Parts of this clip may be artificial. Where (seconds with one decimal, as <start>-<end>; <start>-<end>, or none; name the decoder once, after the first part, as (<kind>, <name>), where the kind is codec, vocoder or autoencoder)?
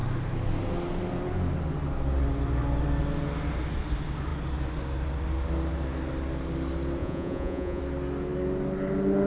7.0-7.8 (vocoder, Vocos)